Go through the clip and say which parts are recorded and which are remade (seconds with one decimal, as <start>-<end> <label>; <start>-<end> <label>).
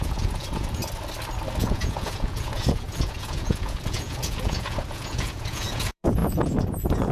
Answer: 0.0-0.8 remade; 0.8-1.6 recorded; 1.6-7.1 remade